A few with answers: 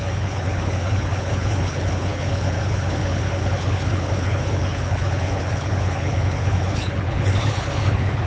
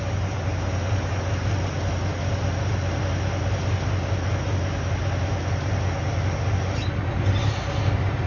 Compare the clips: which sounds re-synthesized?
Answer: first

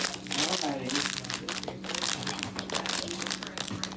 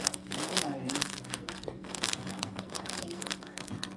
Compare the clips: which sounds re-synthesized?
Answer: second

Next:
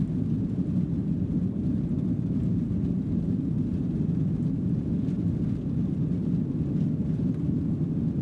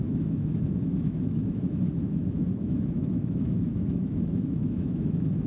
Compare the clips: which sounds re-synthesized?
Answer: second